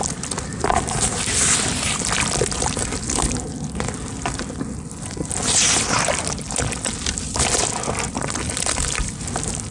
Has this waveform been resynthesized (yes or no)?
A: no